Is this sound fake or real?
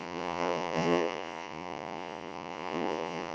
fake